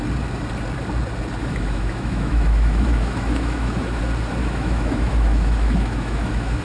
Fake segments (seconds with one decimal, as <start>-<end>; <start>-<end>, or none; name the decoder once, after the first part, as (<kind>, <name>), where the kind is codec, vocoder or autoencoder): 1.4-4.0 (autoencoder, DAC-VAE); 4.4-6.6